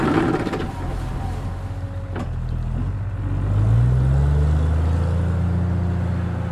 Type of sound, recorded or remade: recorded